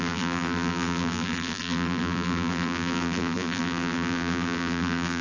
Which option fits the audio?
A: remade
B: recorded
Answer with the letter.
A